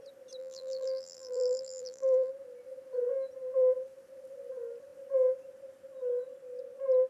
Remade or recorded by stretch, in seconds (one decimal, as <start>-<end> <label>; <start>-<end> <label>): 0.0-0.4 recorded; 0.4-2.3 remade; 2.3-7.1 recorded